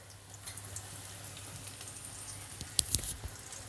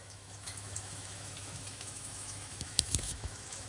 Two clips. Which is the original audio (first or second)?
first